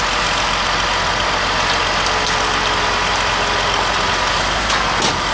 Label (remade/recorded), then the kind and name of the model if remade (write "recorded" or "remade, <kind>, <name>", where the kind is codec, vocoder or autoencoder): recorded